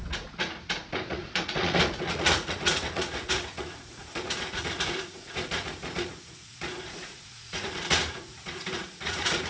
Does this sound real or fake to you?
fake